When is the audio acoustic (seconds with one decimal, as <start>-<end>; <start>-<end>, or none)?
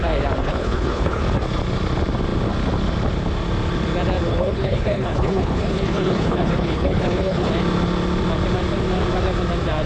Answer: 0.0-0.4; 1.2-4.3; 7.5-9.9